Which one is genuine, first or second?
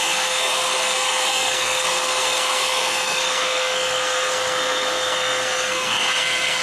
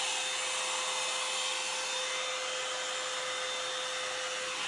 second